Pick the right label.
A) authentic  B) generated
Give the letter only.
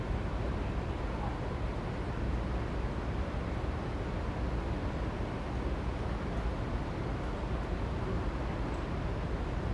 A